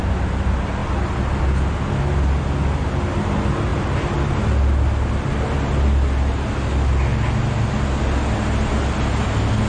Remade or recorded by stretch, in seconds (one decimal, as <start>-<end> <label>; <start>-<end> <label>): 0.0-9.7 recorded